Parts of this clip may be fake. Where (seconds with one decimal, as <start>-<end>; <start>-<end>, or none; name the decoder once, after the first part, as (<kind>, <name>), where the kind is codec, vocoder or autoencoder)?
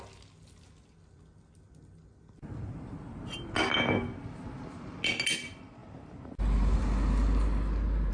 none